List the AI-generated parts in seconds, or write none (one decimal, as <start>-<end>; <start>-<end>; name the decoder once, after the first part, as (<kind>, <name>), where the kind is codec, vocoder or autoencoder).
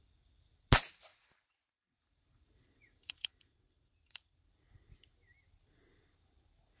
1.1-4.5 (vocoder, BigVGAN v2)